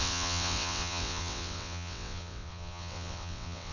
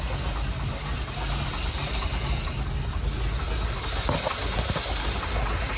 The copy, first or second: first